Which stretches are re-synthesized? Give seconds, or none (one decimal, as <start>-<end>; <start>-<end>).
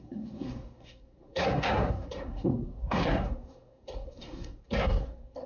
0.0-5.5